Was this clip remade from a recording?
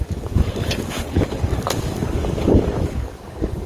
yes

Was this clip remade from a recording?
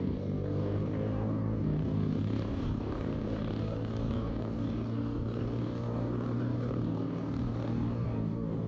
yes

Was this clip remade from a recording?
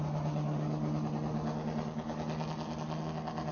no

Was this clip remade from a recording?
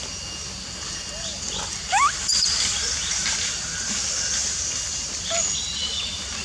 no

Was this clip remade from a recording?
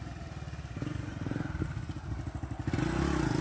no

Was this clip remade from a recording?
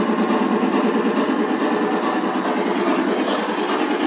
no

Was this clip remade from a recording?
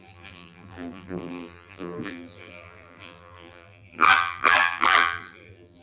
yes